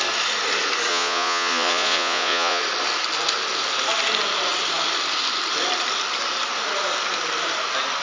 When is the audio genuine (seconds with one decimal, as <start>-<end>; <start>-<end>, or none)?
0.0-0.9; 2.6-8.0